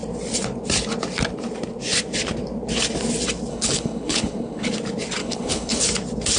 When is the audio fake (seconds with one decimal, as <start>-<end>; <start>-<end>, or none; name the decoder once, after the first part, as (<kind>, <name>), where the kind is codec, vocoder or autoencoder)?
3.5-4.7 (codec, HILCodec); 5.2-5.8